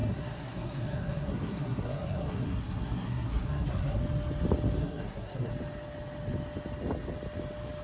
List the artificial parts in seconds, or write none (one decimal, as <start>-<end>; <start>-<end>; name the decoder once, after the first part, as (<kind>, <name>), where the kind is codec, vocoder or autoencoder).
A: 0.0-4.0 (codec, SNAC); 4.8-5.5

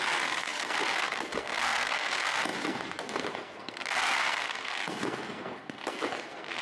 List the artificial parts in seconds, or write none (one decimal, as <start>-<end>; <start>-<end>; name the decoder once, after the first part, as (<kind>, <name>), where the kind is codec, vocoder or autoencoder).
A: 0.0-6.6 (codec, SNAC)

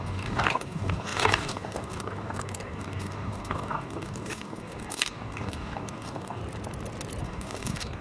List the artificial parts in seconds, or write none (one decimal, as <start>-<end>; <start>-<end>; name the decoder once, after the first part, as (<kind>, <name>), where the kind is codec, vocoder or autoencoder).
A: 0.0-6.4 (codec, DAC); 7.2-8.0

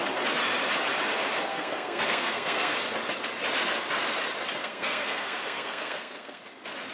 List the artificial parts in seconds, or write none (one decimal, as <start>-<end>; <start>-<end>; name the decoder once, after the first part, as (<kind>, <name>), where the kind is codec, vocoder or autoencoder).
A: 1.5-2.7 (codec, SNAC); 4.6-6.4

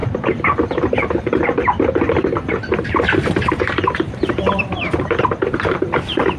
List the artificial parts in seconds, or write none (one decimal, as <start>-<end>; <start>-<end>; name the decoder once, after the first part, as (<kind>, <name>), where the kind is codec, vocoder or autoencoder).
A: 2.5-6.4 (vocoder, BigVGAN v2)